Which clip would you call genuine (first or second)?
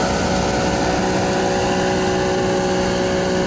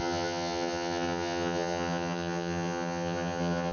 first